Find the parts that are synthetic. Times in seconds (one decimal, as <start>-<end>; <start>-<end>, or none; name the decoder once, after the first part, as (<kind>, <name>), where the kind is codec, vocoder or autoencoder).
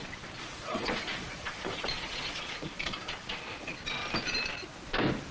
0.0-4.0 (vocoder, Vocos)